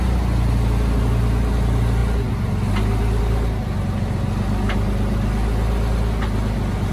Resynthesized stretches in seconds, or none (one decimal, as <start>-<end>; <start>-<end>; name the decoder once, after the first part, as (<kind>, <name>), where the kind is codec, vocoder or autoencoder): none